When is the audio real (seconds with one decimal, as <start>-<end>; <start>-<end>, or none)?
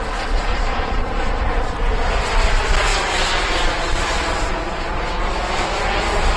0.0-0.5; 1.3-6.4